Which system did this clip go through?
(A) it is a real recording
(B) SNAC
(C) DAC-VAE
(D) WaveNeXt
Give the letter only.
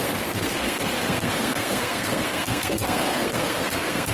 B